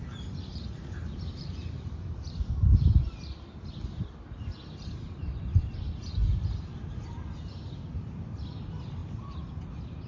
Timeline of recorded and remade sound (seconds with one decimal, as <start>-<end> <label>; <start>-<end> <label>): 0.0-6.3 remade; 6.3-6.9 recorded; 6.9-10.1 remade